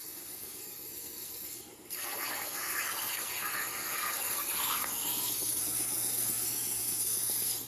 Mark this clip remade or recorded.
remade